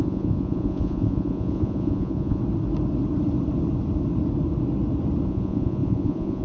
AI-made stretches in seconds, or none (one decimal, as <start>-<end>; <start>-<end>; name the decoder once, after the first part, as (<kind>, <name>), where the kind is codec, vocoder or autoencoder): 0.0-2.4 (vocoder, Vocos); 5.3-6.4